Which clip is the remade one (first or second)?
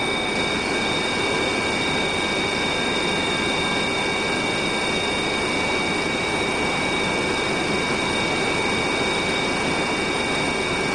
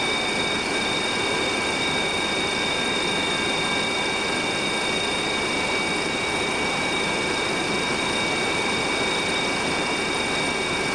second